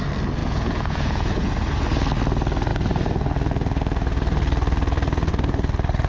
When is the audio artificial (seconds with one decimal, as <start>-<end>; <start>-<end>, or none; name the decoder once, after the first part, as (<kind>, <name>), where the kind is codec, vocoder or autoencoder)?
0.4-1.5 (vocoder, Vocos)